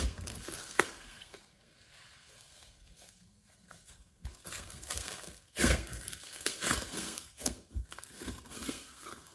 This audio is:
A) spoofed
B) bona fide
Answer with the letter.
A